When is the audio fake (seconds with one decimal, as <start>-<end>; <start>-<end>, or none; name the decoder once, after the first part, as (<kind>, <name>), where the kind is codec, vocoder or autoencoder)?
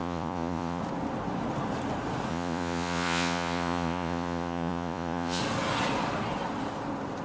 0.0-0.8 (vocoder, Vocos); 2.3-5.4